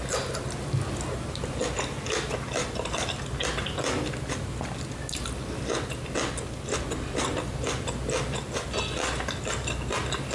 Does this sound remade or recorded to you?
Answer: recorded